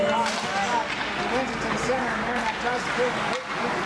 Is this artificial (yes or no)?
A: no